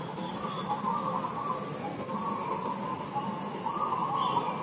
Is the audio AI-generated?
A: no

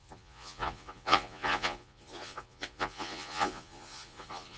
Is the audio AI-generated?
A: yes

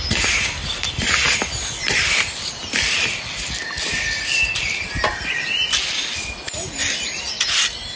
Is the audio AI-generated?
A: no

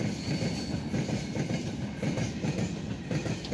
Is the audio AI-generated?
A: no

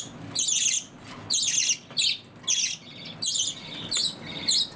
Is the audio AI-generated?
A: no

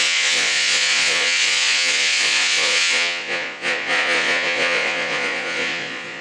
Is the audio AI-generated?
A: yes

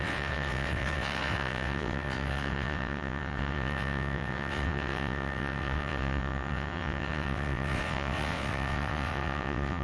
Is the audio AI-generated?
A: yes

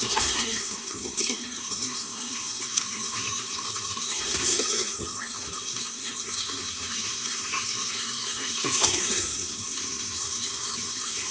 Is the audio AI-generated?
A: yes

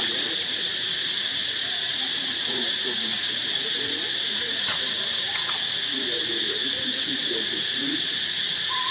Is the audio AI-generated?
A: yes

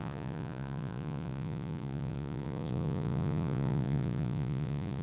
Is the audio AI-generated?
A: yes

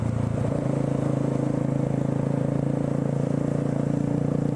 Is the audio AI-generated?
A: no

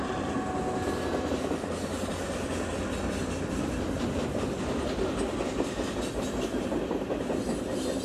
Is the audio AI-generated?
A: no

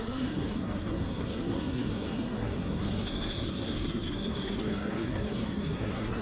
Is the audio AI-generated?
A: yes